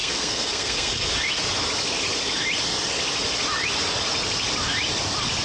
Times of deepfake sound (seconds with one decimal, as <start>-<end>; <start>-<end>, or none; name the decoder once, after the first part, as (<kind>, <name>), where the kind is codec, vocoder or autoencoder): 0.0-1.1 (codec, SNAC)